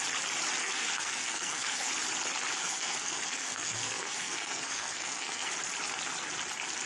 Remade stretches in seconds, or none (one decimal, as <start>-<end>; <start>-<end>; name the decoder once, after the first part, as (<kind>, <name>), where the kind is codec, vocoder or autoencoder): 0.6-1.9 (codec, SNAC); 2.6-5.5

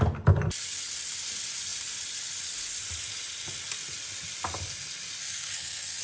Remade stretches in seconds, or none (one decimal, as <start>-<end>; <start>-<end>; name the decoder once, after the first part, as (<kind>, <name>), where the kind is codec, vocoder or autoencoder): 5.2-6.0 (codec, SNAC)

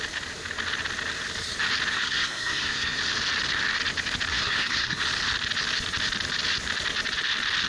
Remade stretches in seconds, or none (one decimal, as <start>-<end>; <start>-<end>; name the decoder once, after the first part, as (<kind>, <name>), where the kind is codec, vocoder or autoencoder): 1.9-3.0 (codec, SNAC); 4.3-5.0

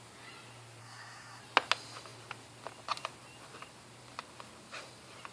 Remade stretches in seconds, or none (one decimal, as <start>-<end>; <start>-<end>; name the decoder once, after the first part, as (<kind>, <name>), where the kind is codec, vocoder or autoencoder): 0.8-1.4 (codec, SNAC)

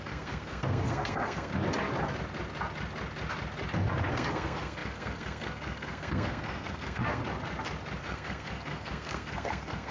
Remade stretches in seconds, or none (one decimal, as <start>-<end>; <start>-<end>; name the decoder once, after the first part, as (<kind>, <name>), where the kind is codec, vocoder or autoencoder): 0.0-1.5 (codec, SNAC); 4.1-7.2; 8.0-9.9

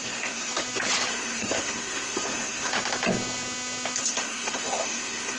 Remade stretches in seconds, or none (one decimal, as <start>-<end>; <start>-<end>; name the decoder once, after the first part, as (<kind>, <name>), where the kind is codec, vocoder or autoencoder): 0.0-0.5 (codec, SNAC); 1.1-2.7; 4.0-5.4

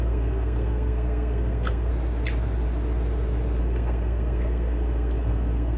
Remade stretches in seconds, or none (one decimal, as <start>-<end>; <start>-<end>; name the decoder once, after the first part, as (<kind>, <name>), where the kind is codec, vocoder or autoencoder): 0.0-1.9 (codec, SNAC); 3.6-5.8

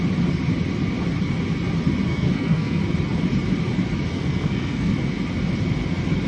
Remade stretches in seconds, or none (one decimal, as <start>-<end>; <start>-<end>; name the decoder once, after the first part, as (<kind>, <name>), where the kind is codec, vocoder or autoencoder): 2.1-2.8 (codec, SNAC); 4.1-4.9